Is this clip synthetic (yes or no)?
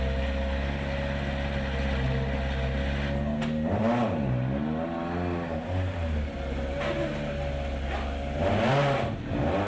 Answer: no